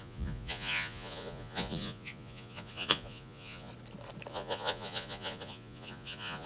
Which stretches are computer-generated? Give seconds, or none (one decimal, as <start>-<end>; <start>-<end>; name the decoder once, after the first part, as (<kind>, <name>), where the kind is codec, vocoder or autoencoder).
0.0-3.7 (vocoder, Vocos); 4.3-6.5